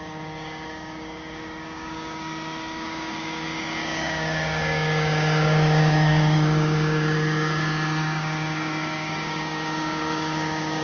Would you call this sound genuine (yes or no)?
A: no